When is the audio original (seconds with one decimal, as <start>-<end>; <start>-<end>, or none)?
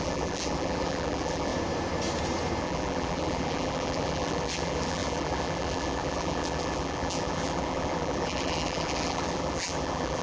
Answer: 1.5-2.6